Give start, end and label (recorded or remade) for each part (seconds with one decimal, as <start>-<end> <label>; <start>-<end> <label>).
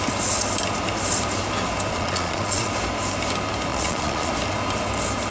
0.0-1.9 recorded; 1.9-2.7 remade; 2.7-3.7 recorded; 3.7-4.3 remade; 4.3-5.3 recorded